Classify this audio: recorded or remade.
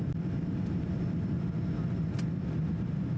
recorded